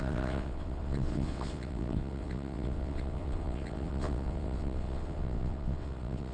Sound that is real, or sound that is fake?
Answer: fake